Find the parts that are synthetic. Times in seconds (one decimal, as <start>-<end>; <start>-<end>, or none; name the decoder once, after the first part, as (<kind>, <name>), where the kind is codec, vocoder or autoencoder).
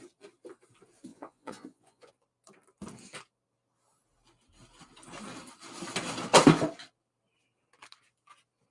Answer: 1.1-2.1 (vocoder, Vocos)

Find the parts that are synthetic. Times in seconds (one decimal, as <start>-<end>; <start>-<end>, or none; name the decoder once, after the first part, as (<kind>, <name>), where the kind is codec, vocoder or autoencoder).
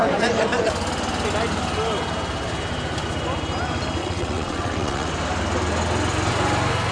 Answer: 4.0-5.1 (vocoder, WaveNeXt)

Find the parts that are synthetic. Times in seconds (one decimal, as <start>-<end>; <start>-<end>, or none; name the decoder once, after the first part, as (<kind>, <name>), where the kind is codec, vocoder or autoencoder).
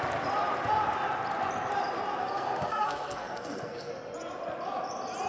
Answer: 2.2-3.9 (codec, SNAC)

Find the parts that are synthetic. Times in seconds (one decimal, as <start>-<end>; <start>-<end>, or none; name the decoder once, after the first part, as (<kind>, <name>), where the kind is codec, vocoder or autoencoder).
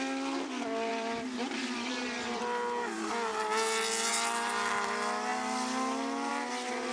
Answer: 0.9-2.4 (vocoder, BigVGAN v2)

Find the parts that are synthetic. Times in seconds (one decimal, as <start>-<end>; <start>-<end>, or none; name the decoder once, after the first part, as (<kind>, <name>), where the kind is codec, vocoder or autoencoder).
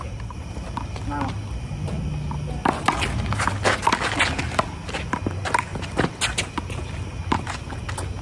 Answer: none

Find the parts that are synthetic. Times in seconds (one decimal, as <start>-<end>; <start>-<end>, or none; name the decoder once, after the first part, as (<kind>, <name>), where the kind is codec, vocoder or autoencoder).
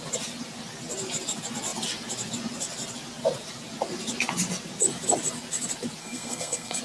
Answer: 6.0-6.8 (codec, SNAC)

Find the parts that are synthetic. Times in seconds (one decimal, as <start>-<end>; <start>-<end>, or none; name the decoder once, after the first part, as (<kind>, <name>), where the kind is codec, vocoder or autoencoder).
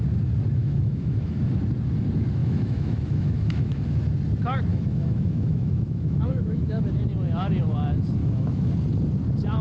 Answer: 0.6-1.4 (autoencoder, DAC-VAE); 2.4-4.0; 4.7-6.8; 8.2-8.7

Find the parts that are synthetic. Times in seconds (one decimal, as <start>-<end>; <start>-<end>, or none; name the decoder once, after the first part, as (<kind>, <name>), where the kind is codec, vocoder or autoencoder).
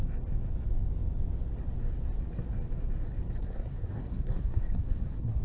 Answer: 3.4-5.4 (codec, SNAC)